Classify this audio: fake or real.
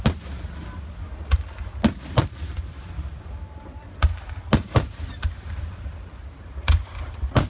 real